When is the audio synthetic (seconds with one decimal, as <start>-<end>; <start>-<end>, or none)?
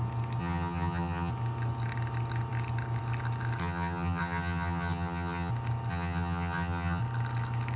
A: 0.4-1.3; 3.6-5.5; 5.9-7.0